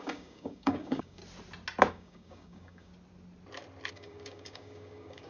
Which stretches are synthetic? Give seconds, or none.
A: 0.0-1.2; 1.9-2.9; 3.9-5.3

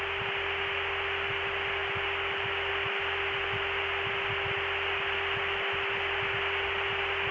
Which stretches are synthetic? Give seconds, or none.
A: none